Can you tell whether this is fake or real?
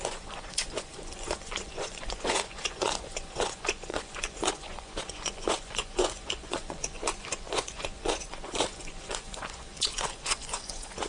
fake